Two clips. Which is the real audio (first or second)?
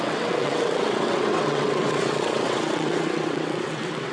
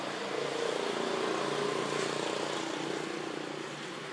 second